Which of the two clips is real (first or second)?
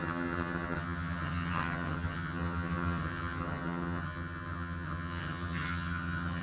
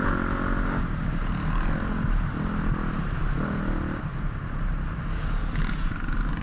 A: second